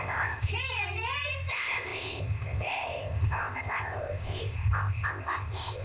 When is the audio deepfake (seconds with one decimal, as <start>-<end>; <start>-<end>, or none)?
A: 0.0-0.5; 1.5-5.8

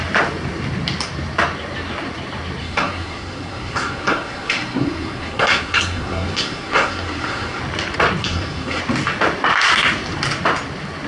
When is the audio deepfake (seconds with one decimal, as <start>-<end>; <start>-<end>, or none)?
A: 2.6-7.6; 8.2-8.8